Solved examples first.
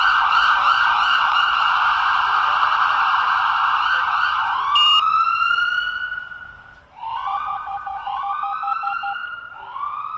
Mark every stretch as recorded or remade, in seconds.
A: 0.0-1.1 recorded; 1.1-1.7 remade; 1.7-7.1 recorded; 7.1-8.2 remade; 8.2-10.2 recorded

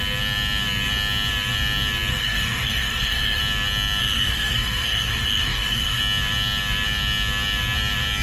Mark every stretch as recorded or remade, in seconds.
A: 0.0-2.1 recorded; 2.1-3.4 remade; 3.4-4.0 recorded; 4.0-6.0 remade; 6.0-8.2 recorded

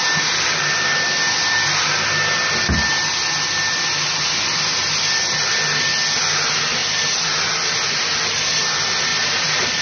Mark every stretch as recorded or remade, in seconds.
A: 0.0-6.8 recorded; 6.8-8.3 remade; 8.3-9.1 recorded; 9.1-9.8 remade

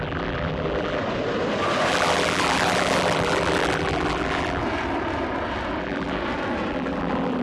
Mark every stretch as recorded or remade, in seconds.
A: 0.0-1.0 remade; 1.0-1.9 recorded; 1.9-4.6 remade; 4.6-5.8 recorded; 5.8-6.2 remade; 6.2-6.7 recorded; 6.7-7.4 remade

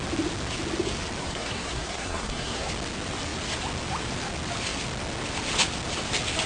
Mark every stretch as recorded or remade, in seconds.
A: 0.0-1.2 recorded; 1.2-2.7 remade; 2.7-6.5 recorded

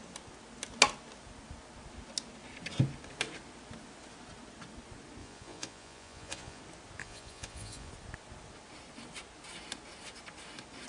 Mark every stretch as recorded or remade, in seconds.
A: 0.0-5.2 recorded; 5.2-6.6 remade; 6.6-7.0 recorded; 7.0-7.9 remade; 7.9-10.9 recorded

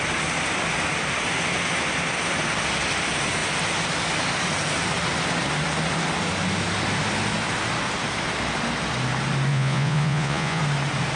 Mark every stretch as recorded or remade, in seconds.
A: 0.0-9.5 recorded; 9.5-10.6 remade; 10.6-11.1 recorded

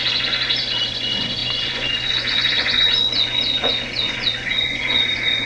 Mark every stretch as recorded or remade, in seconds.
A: 0.0-5.5 remade